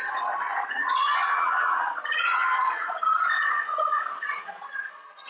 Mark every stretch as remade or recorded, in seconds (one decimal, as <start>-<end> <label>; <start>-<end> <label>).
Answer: 0.0-5.3 remade